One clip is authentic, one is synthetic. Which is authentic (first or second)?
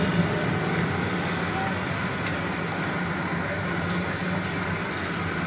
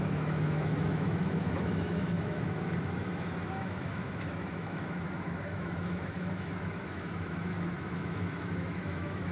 first